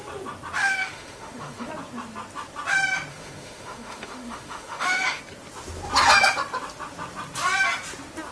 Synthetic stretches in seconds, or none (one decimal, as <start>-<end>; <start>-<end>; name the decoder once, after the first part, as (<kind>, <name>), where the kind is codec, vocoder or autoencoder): 0.6-1.7 (autoencoder, DAC-VAE); 3.1-5.2